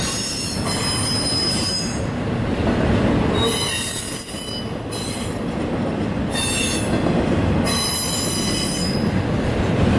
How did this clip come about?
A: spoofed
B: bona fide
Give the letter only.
B